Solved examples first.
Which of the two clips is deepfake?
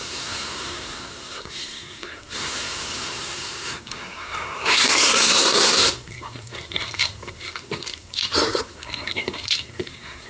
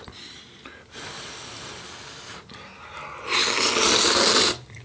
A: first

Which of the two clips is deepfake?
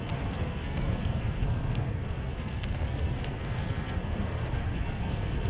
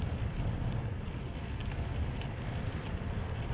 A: first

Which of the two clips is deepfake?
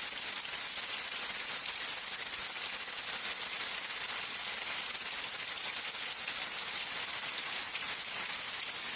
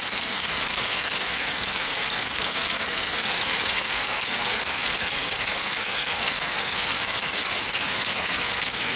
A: second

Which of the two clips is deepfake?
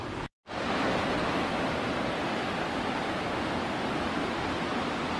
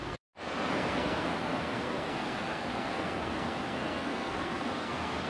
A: second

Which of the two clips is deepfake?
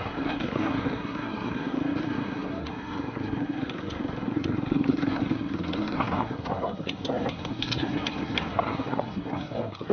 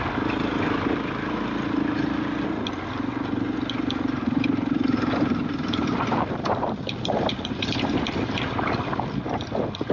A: first